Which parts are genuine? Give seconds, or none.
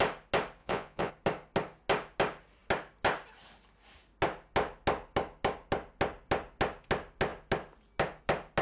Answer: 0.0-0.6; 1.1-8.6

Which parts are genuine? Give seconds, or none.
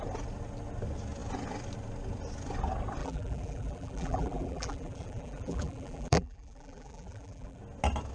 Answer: 0.0-3.0; 7.6-8.1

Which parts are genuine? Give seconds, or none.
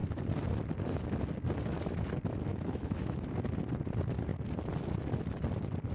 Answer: 0.0-2.5; 3.3-5.9